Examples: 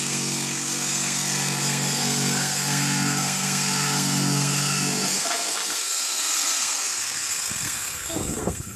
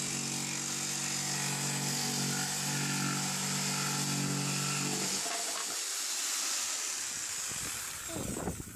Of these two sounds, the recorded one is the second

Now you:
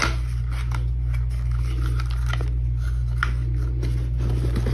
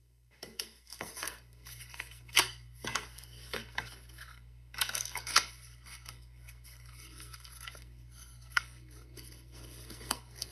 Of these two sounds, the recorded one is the first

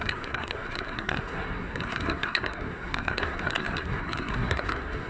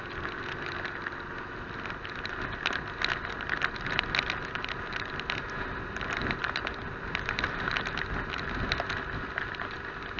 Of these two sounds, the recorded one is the second